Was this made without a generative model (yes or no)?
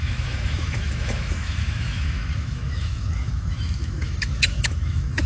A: no